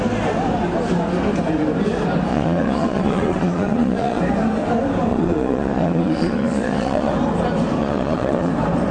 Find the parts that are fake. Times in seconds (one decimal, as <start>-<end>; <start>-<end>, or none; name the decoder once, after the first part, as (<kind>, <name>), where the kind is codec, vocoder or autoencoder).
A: 2.3-4.2 (vocoder, Vocos); 5.1-7.1; 7.8-8.5